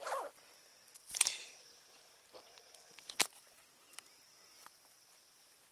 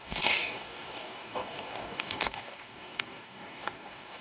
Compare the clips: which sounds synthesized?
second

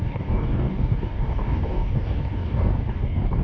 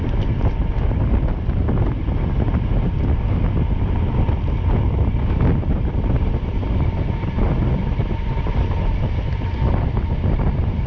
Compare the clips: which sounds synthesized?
first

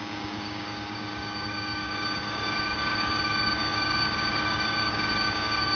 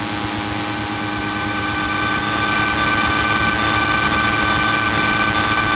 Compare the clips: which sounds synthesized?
first